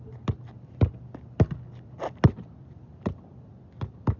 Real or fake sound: real